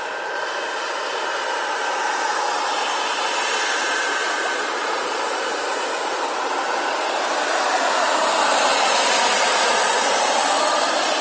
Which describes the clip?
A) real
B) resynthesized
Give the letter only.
B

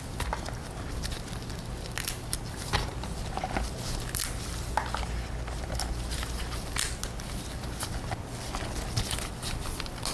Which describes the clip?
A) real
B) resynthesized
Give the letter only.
A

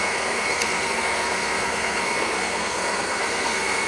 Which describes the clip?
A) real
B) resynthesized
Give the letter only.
B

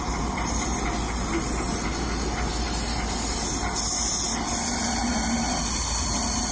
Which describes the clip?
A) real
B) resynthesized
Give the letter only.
A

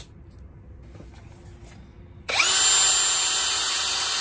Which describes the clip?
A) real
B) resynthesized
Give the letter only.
A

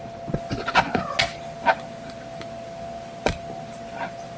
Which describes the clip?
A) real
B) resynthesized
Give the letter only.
A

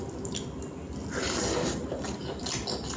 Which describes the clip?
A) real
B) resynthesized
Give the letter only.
A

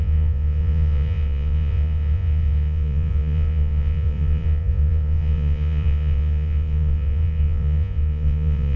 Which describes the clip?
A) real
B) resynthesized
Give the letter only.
B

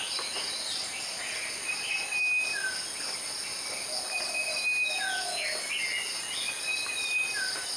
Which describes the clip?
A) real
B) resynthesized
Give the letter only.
A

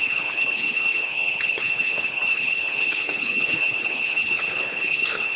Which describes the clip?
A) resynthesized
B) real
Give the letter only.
A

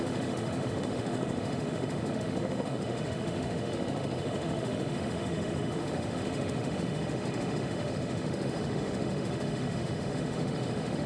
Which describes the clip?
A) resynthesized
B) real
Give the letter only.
A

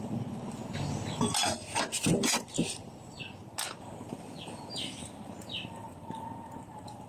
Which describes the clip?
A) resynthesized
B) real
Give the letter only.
B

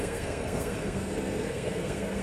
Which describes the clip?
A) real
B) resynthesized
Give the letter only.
B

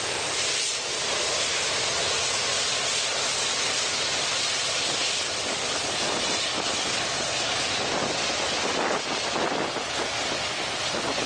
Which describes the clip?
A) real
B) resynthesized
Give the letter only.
A